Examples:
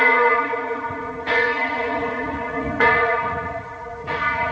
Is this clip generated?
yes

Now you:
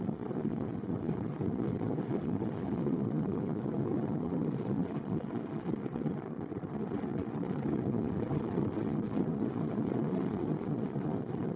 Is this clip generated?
yes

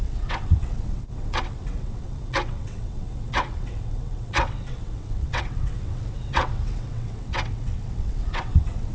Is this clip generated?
yes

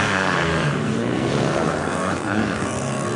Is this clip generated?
yes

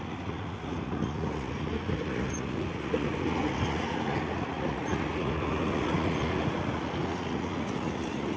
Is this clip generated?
yes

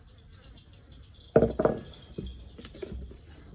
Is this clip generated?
no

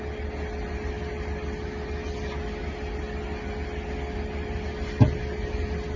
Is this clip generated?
no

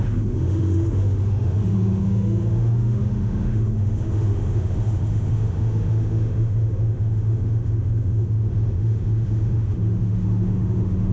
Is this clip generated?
yes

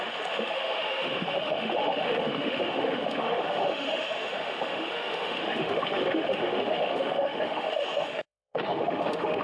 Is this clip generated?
yes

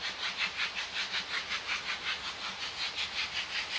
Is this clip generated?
no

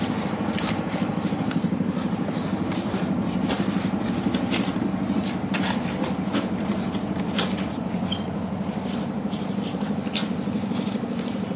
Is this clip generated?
yes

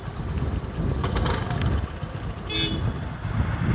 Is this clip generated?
no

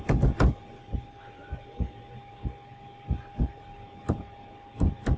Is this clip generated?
no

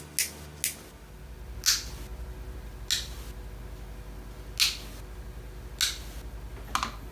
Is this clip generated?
no